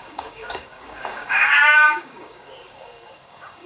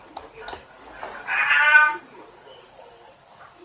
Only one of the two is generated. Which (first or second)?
first